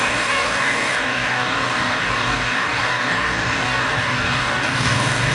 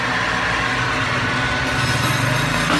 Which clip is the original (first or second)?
second